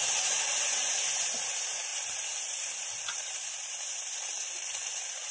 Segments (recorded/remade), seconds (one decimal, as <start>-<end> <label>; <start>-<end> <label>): 0.0-5.3 remade